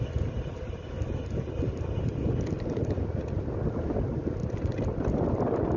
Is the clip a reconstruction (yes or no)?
no